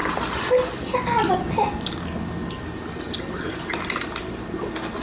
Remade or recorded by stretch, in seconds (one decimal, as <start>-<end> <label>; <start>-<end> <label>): 0.0-5.0 recorded